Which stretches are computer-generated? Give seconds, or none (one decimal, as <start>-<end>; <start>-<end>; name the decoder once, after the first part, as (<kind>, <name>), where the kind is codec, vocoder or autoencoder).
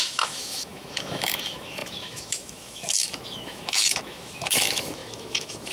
0.0-5.7 (autoencoder, DAC-VAE)